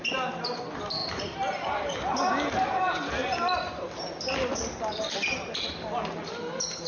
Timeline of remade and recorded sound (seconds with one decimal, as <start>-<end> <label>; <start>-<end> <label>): 0.0-6.9 recorded